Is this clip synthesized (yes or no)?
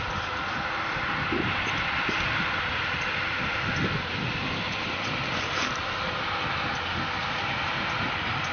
no